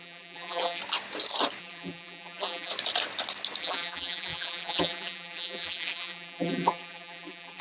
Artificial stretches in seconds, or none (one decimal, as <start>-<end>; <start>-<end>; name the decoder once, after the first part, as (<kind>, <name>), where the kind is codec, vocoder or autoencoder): 0.0-0.8 (vocoder, BigVGAN v2); 1.6-2.7; 3.6-7.6